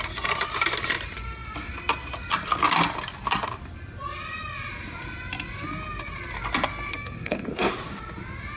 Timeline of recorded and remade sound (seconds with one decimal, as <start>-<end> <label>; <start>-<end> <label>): 0.0-6.9 recorded; 6.9-7.7 remade; 7.7-8.6 recorded